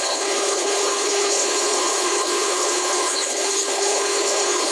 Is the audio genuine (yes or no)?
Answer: no